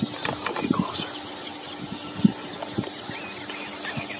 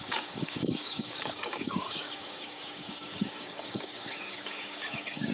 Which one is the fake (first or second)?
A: second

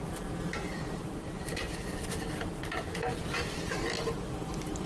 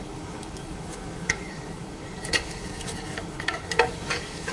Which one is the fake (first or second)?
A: second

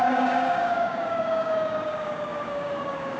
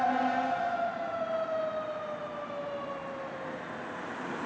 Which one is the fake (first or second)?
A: first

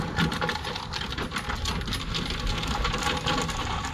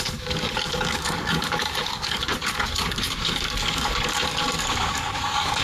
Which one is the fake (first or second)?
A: second